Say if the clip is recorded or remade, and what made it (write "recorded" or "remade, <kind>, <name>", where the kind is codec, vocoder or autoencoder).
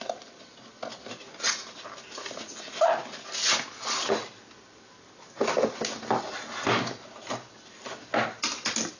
recorded